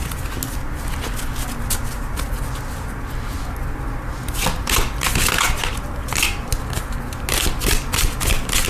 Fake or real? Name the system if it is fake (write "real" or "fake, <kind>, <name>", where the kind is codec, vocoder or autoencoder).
real